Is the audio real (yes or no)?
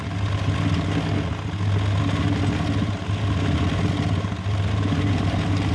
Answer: yes